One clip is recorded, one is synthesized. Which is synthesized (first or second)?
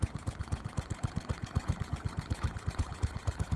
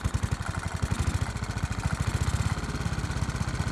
first